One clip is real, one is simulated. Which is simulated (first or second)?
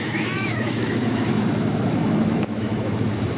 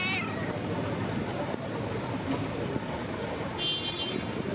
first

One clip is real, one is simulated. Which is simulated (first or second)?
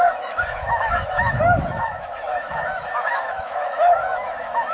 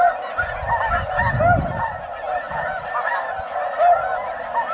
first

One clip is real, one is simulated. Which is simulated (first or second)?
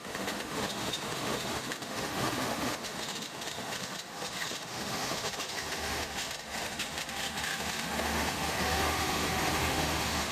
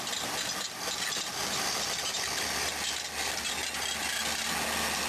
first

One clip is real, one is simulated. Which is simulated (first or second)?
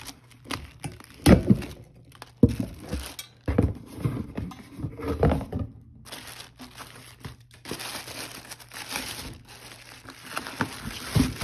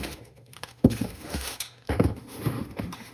second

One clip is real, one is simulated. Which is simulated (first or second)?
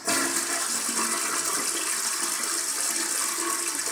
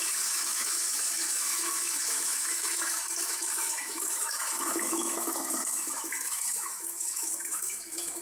second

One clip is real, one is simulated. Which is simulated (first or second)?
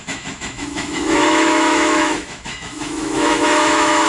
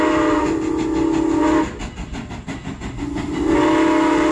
first